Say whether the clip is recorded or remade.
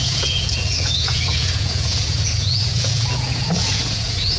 remade